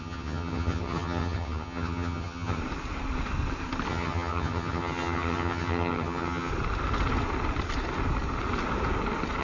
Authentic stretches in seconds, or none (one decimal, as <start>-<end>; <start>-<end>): 2.6-3.9; 6.5-9.4